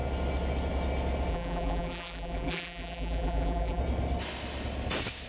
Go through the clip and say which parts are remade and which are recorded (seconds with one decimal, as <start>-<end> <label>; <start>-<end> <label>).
0.0-1.3 recorded; 1.3-3.8 remade; 3.8-5.3 recorded